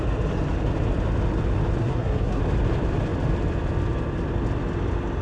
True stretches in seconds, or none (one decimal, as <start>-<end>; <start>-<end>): 0.0-1.8; 2.4-5.2